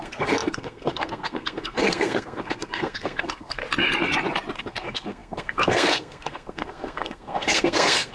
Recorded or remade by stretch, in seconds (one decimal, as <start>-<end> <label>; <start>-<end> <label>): 0.0-3.6 remade; 3.6-4.6 recorded; 4.6-8.1 remade